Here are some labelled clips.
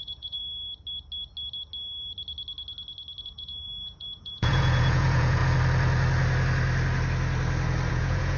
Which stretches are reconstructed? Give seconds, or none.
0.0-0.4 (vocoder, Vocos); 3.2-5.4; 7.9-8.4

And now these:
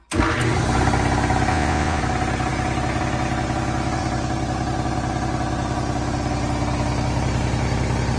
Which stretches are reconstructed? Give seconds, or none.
1.5-2.0 (vocoder, Vocos)